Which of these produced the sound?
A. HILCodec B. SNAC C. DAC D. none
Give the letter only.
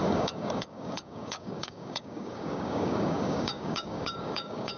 C